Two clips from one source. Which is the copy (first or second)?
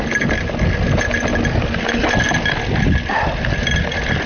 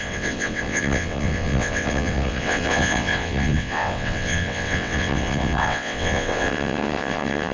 second